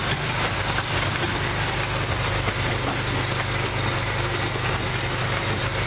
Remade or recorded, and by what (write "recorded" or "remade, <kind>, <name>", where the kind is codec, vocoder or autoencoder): recorded